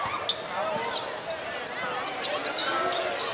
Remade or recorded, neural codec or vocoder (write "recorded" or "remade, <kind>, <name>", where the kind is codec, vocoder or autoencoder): recorded